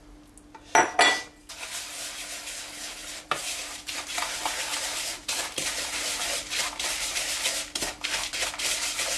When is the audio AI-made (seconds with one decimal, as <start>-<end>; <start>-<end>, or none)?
3.0-7.5